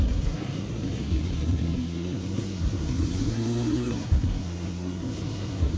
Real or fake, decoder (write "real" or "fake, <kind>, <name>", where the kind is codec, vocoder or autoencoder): fake, codec, SNAC